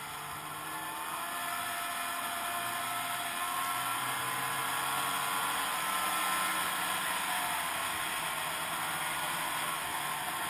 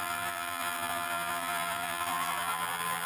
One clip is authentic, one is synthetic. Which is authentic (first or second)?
first